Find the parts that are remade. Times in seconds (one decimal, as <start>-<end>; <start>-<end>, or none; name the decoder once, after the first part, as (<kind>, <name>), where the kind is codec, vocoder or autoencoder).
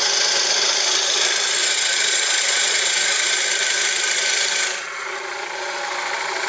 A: 1.6-3.3 (vocoder, Vocos)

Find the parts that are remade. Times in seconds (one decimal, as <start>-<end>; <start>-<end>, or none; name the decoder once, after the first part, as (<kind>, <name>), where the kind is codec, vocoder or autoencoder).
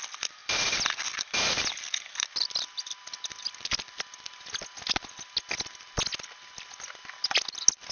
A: none